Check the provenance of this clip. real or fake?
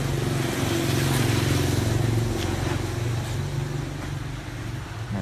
real